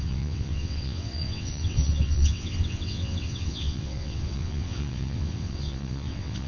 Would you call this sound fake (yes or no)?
yes